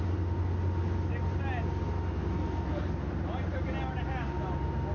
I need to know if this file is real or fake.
real